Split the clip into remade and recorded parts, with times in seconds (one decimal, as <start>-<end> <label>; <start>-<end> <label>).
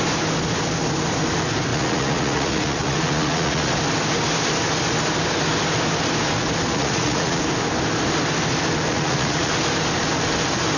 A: 0.0-1.7 recorded; 1.7-3.7 remade; 3.7-6.7 recorded; 6.7-7.4 remade; 7.4-8.9 recorded; 8.9-9.5 remade; 9.5-10.8 recorded